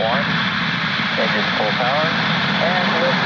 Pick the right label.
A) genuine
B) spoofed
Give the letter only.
A